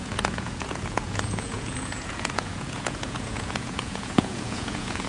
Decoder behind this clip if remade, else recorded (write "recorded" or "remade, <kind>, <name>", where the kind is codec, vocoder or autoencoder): remade, vocoder, Vocos